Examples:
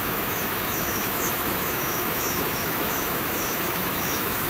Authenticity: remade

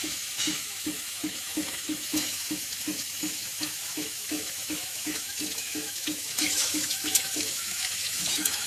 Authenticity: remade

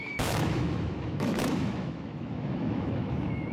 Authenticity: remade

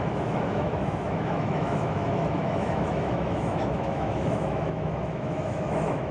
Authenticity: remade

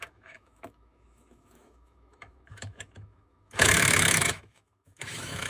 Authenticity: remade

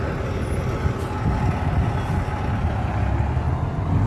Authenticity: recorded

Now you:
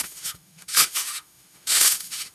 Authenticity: remade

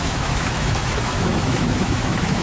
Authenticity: remade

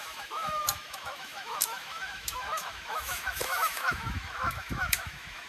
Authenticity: remade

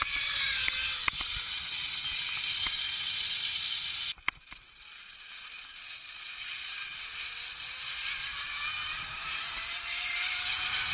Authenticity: recorded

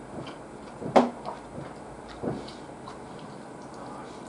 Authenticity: recorded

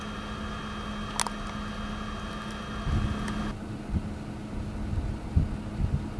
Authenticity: recorded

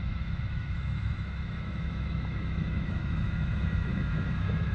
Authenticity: remade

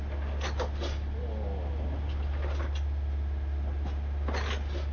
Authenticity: recorded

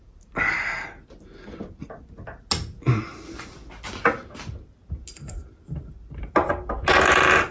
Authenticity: recorded